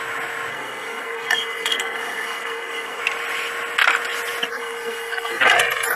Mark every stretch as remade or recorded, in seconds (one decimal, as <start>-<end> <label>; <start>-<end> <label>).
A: 0.0-0.5 recorded; 0.5-3.0 remade; 3.0-4.5 recorded; 4.5-5.4 remade; 5.4-6.0 recorded